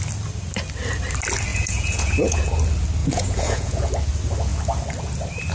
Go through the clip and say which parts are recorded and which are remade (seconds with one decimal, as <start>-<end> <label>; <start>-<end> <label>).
0.0-1.5 recorded; 1.5-2.4 remade; 2.4-3.0 recorded; 3.0-3.9 remade; 3.9-5.5 recorded